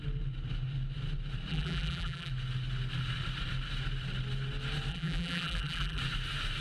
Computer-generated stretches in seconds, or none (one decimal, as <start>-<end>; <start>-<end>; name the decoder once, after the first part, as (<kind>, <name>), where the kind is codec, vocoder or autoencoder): 1.5-2.3 (vocoder, BigVGAN v2); 4.9-6.0